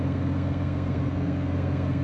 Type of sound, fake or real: fake